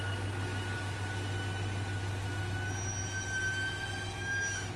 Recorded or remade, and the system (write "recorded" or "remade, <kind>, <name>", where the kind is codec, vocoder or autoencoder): recorded